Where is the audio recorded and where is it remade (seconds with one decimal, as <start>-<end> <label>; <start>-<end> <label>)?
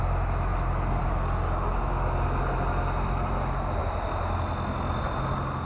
0.0-5.7 recorded